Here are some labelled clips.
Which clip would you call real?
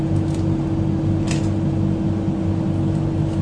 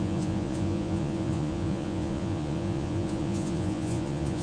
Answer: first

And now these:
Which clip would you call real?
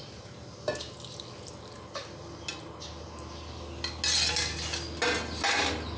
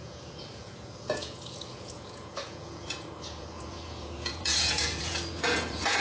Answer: first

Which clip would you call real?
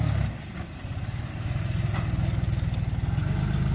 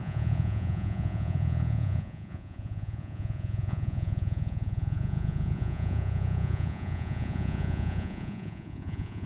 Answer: first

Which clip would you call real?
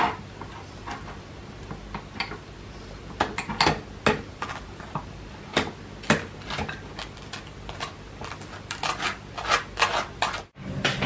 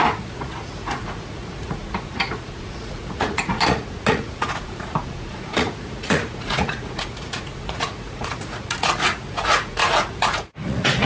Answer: first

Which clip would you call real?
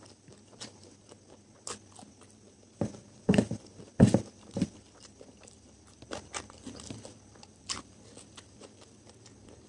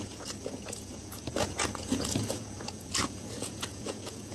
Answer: first